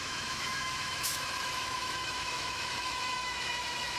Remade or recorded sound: remade